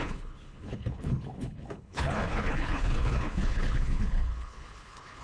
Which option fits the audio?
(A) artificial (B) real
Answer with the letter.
A